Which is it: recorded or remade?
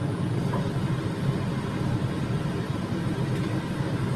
recorded